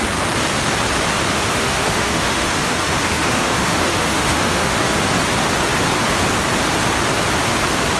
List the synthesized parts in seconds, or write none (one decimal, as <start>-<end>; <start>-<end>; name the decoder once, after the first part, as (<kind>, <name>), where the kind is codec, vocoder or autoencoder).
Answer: 1.3-5.0 (autoencoder, DAC-VAE)